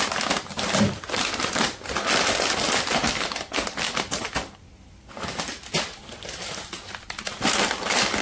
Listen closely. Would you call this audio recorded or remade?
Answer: recorded